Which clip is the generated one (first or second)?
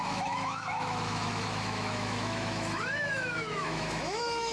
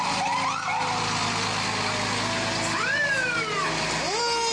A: first